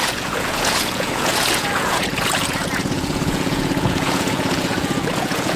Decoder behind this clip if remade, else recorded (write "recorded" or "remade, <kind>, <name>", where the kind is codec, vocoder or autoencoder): remade, vocoder, Vocos